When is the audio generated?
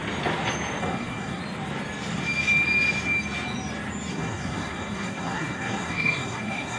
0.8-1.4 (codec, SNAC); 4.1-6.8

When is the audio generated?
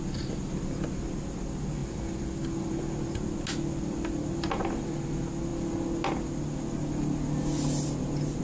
none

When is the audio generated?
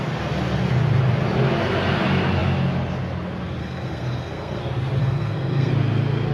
3.6-4.6 (codec, SNAC); 5.0-5.7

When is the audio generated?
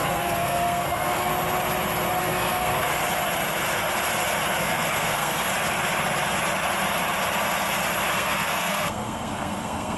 0.0-1.3 (codec, SNAC); 2.2-2.9; 4.6-5.5; 8.1-10.0